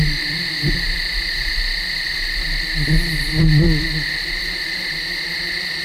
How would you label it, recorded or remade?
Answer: recorded